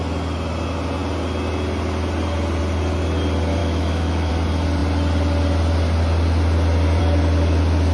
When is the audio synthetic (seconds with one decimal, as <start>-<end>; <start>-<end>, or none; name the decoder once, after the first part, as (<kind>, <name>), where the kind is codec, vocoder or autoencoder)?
3.6-4.3 (autoencoder, DAC-VAE)